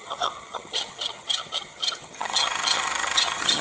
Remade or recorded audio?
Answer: remade